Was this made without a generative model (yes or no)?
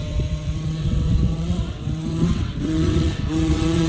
no